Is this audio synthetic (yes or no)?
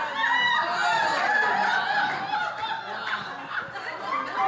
no